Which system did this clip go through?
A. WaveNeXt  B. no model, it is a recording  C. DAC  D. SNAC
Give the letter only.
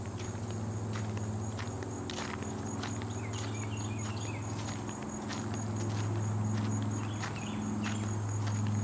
B